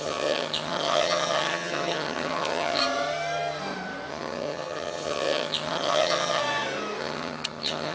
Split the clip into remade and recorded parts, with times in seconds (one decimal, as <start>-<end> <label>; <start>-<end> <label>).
0.0-2.8 remade; 2.8-4.1 recorded; 4.1-6.4 remade; 6.4-7.0 recorded; 7.0-7.9 remade